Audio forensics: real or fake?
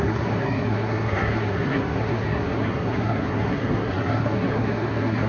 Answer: fake